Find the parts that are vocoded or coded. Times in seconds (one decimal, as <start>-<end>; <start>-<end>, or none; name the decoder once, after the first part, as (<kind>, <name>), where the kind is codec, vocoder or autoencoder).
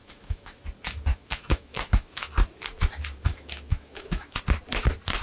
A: 0.0-0.6 (autoencoder, DAC-VAE); 1.1-2.3; 3.3-4.4